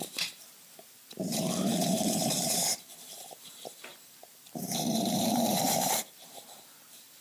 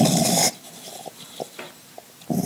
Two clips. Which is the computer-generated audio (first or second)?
first